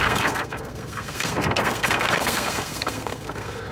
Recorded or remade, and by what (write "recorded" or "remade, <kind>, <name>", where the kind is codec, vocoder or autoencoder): remade, codec, SNAC